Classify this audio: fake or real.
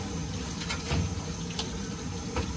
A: real